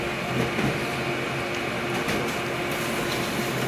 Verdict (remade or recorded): recorded